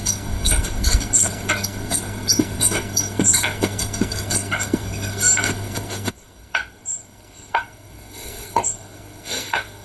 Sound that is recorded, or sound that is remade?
remade